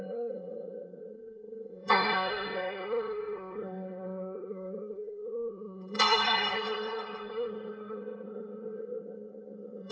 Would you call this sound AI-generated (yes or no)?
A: yes